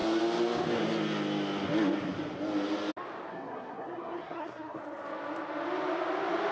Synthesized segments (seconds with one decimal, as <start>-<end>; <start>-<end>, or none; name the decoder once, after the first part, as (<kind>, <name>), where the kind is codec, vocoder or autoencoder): 3.3-4.8 (codec, SNAC)